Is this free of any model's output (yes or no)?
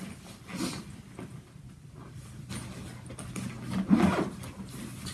yes